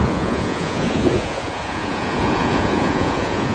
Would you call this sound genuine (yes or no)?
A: no